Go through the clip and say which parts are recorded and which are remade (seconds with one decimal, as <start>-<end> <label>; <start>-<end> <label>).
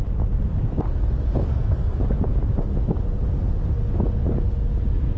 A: 0.0-1.5 recorded; 1.5-2.0 remade; 2.0-5.2 recorded